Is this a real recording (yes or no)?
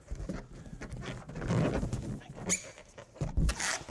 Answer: yes